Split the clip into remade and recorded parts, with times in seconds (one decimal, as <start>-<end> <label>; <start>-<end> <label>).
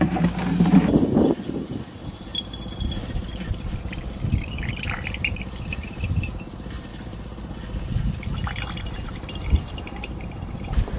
0.0-2.3 remade; 2.3-5.2 recorded; 5.2-6.9 remade; 6.9-8.8 recorded; 8.8-11.0 remade